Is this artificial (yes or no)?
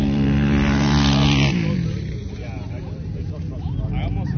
no